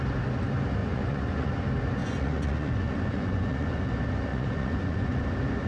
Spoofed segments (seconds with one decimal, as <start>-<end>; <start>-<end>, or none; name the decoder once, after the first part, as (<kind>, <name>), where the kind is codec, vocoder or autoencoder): 0.8-1.5 (vocoder, Vocos); 2.0-3.8; 4.3-5.2